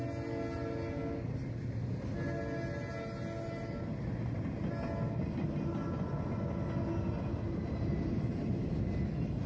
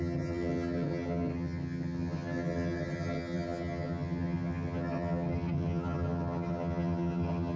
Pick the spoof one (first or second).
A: second